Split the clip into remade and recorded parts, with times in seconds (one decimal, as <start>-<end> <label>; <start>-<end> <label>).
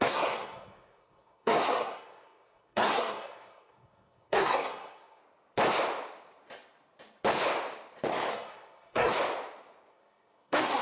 0.0-5.2 remade; 5.2-8.3 recorded; 8.3-9.1 remade; 9.1-9.9 recorded; 9.9-10.8 remade